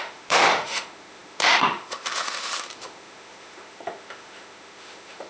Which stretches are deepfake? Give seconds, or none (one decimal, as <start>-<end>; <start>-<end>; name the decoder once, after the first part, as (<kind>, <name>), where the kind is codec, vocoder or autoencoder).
0.0-5.3 (autoencoder, DAC-VAE)